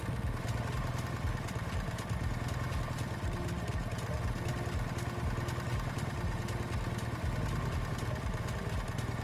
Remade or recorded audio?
recorded